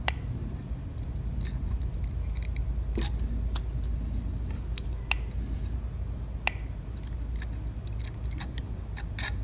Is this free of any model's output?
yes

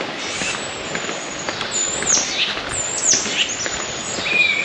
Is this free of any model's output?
yes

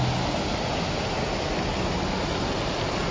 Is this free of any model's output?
yes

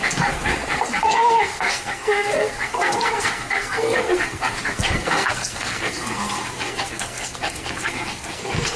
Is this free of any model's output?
no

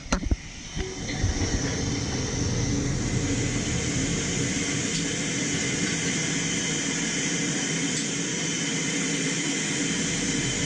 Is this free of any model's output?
yes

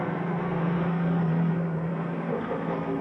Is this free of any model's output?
no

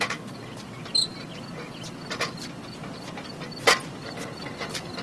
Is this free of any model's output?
yes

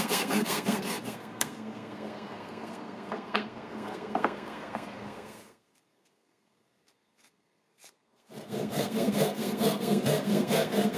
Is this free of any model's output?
no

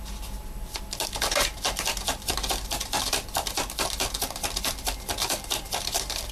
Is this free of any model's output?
yes